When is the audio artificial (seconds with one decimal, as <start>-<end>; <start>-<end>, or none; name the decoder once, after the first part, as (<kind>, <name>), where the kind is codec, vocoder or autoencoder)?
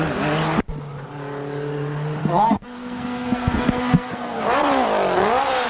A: 2.2-4.4 (codec, SNAC)